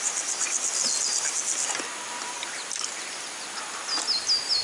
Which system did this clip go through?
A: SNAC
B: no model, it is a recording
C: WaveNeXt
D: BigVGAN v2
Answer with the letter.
B